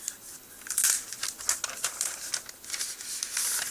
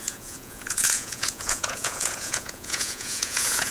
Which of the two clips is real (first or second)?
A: first